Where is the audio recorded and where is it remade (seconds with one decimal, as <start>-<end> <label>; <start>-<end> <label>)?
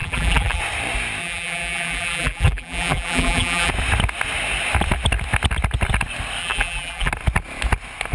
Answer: 0.0-0.6 remade; 0.6-1.2 recorded; 1.2-3.7 remade; 3.7-6.4 recorded; 6.4-7.1 remade; 7.1-8.1 recorded